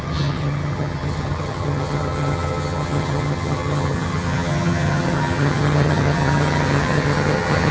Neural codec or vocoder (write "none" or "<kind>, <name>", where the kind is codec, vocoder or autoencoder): vocoder, HiFi-GAN